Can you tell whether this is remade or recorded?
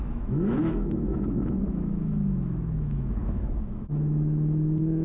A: remade